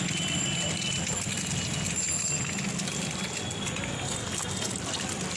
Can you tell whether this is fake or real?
real